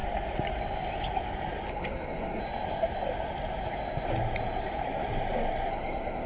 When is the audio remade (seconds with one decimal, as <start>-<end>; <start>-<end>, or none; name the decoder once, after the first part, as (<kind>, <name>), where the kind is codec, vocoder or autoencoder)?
1.7-2.4 (codec, SNAC); 5.7-6.3